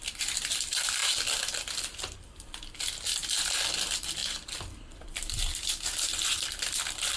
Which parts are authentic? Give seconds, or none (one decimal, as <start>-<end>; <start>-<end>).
none